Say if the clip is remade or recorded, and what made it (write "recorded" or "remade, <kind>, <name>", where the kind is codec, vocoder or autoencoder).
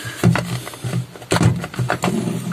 recorded